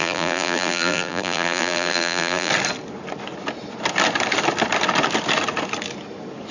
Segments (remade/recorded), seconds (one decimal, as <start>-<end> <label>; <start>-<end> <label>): 0.0-2.5 remade; 2.5-6.5 recorded